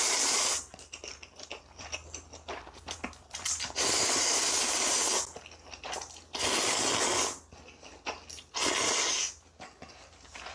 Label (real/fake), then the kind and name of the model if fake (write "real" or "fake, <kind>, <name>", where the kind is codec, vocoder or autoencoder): real